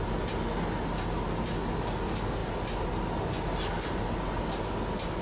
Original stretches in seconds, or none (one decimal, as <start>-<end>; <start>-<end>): 0.0-5.2